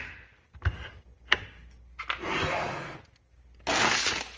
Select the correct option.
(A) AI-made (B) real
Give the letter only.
B